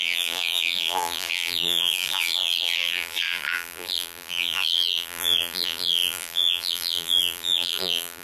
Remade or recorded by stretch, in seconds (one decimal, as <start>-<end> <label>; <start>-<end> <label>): 0.0-8.2 remade